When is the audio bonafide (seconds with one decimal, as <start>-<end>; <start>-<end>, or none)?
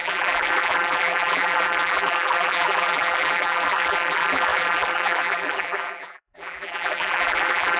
none